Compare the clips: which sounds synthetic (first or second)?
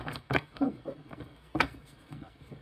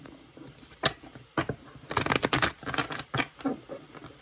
first